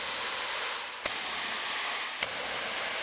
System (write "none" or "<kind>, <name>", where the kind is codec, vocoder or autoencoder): none